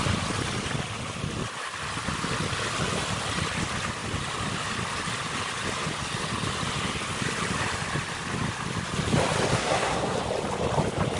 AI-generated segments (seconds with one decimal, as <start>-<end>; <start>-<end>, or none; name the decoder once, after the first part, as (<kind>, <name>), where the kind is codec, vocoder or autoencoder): 9.5-10.2 (codec, SNAC)